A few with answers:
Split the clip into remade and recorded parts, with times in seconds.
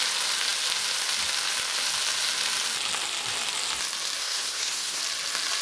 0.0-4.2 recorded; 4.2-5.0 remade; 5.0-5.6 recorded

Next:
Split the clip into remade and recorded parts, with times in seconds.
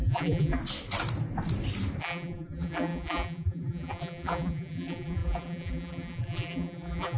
0.0-0.6 remade; 0.6-2.0 recorded; 2.0-7.2 remade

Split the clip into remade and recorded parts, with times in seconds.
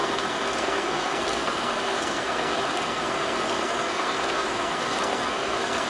0.0-5.9 remade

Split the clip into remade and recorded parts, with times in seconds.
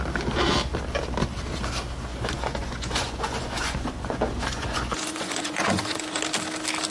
0.0-2.1 recorded; 2.1-6.2 remade; 6.2-6.9 recorded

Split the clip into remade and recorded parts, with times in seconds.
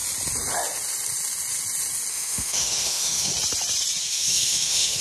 0.0-2.1 recorded; 2.1-3.3 remade; 3.3-4.0 recorded; 4.0-5.0 remade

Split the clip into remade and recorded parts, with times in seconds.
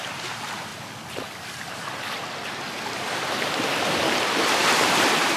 0.0-0.7 remade; 0.7-3.9 recorded; 3.9-5.4 remade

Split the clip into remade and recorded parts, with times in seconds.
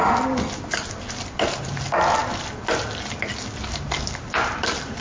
0.0-5.0 recorded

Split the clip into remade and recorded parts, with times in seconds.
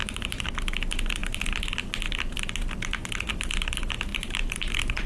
0.0-0.5 remade; 0.5-4.1 recorded; 4.1-5.1 remade